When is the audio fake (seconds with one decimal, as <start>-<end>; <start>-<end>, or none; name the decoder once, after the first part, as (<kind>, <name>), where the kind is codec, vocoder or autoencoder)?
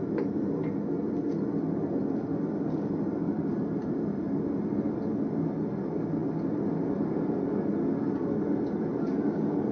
none